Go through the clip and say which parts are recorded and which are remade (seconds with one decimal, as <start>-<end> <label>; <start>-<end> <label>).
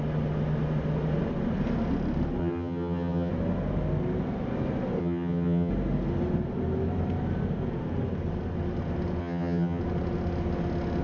0.0-2.4 recorded; 2.4-3.3 remade; 3.3-5.0 recorded; 5.0-5.7 remade; 5.7-9.2 recorded; 9.2-9.8 remade; 9.8-11.0 recorded